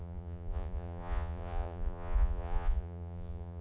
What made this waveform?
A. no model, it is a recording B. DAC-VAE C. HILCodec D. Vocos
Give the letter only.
D